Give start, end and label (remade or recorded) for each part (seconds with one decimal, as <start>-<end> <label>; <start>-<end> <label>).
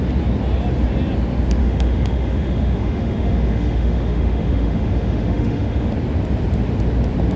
0.0-1.6 recorded; 1.6-5.9 remade; 5.9-7.4 recorded